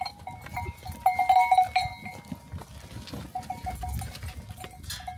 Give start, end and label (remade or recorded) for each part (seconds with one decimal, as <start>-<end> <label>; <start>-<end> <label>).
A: 0.0-5.2 recorded